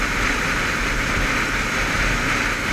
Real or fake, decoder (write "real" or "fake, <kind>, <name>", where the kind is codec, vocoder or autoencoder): real